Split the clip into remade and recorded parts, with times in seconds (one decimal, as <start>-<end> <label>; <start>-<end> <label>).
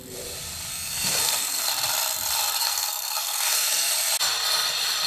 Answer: 0.0-0.7 recorded; 0.7-1.7 remade; 1.7-2.6 recorded; 2.6-3.9 remade; 3.9-5.1 recorded